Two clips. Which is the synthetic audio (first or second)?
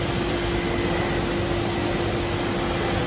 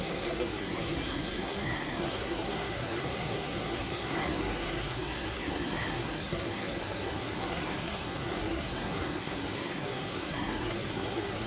second